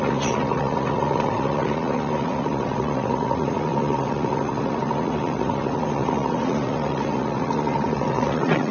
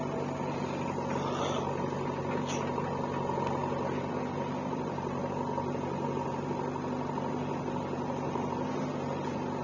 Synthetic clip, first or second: first